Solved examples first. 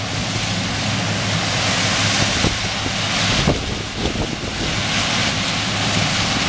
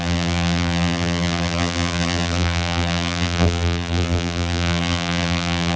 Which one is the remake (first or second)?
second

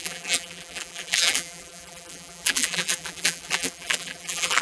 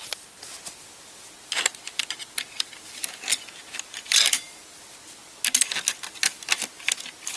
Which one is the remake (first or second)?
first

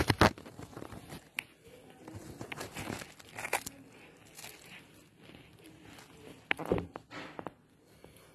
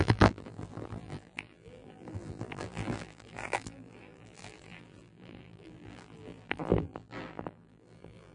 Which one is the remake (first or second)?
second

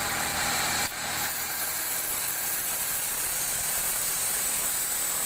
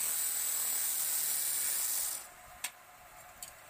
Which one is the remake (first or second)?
first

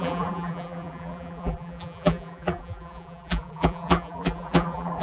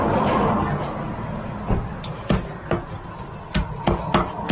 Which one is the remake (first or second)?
first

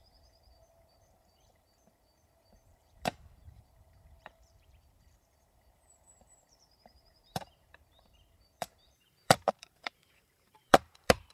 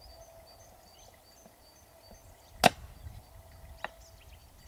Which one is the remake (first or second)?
first